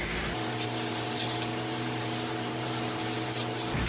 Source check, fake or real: fake